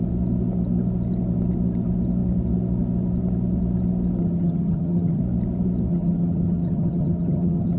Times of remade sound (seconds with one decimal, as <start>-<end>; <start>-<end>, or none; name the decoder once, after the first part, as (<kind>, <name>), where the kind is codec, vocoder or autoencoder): 4.2-5.2 (vocoder, HiFi-GAN); 5.9-7.8